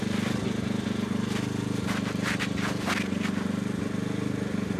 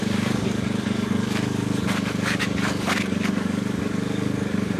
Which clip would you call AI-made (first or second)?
second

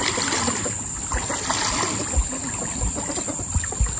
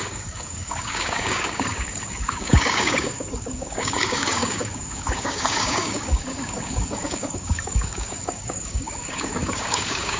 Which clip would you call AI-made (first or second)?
second